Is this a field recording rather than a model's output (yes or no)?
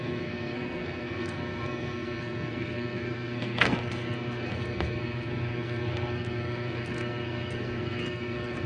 no